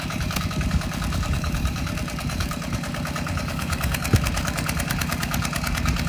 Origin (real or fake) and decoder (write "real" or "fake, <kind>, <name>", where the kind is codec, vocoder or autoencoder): fake, codec, DAC